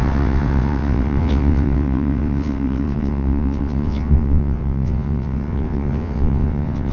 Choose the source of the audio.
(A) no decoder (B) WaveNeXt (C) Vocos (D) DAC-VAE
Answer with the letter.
B